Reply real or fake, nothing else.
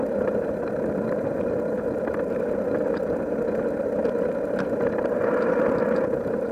real